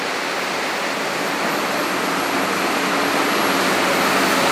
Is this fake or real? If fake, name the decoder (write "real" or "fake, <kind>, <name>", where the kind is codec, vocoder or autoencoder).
real